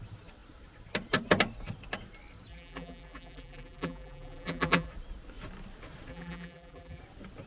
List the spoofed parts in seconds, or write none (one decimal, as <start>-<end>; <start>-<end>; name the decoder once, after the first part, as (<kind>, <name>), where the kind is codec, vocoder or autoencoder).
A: 2.5-4.9 (vocoder, BigVGAN v2); 6.1-7.0